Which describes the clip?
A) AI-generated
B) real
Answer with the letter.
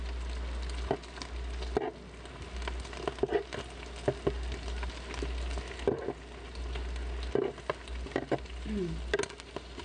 B